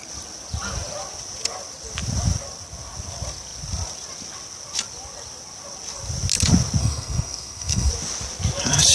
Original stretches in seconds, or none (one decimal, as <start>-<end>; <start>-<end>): 0.0-6.8; 7.9-8.9